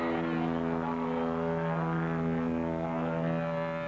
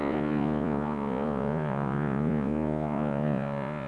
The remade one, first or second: second